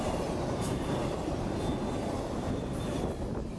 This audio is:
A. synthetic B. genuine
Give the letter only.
B